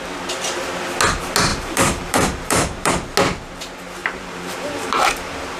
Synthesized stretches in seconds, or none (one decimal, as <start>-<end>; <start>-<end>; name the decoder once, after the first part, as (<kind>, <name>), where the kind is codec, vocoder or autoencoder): 1.5-2.9 (vocoder, BigVGAN v2); 4.0-5.1